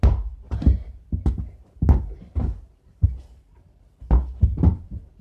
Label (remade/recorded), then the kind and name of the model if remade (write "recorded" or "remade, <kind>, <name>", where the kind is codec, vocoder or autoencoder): recorded